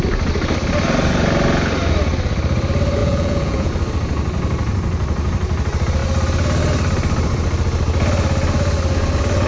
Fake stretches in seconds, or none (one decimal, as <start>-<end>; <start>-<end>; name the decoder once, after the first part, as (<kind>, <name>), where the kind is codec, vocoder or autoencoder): 3.0-3.7 (vocoder, Vocos)